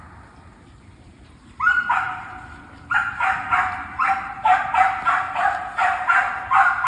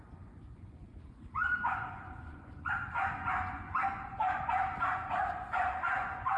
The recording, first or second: first